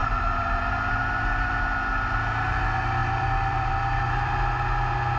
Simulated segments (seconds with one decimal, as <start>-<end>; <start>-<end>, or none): 3.0-3.7